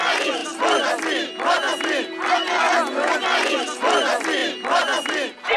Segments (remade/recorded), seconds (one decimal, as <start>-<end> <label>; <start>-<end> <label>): 0.0-5.6 recorded